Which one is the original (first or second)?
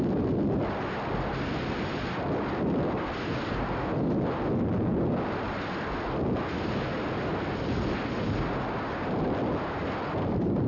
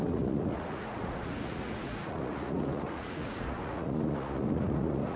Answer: first